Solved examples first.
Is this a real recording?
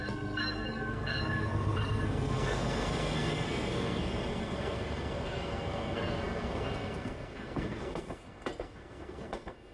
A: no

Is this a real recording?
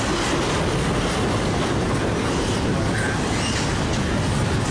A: yes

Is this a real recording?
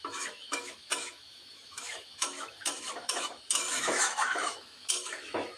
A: no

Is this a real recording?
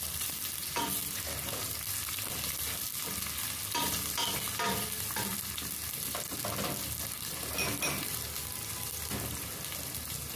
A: yes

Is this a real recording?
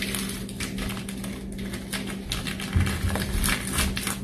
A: yes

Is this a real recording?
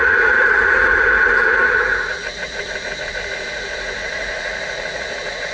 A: no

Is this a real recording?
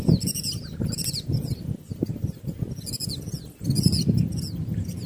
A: yes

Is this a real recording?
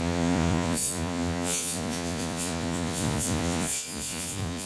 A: no